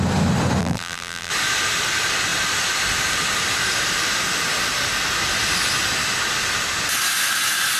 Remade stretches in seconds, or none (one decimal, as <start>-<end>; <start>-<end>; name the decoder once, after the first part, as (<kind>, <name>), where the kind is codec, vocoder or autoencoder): 0.6-1.3 (vocoder, BigVGAN v2)